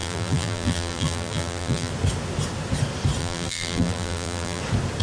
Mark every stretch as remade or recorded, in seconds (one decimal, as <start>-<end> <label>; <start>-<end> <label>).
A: 0.0-1.9 remade; 1.9-3.2 recorded; 3.2-4.6 remade; 4.6-5.0 recorded